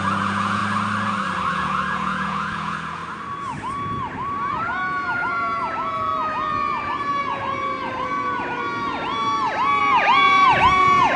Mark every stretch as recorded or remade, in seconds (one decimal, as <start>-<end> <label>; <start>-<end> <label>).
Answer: 0.0-0.6 remade; 0.6-1.5 recorded; 1.5-3.0 remade; 3.0-4.5 recorded; 4.5-6.1 remade; 6.1-9.8 recorded; 9.8-11.2 remade